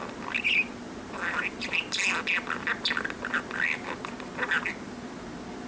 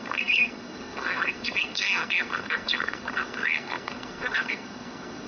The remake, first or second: second